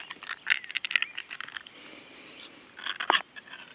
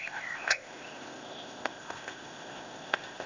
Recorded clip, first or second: first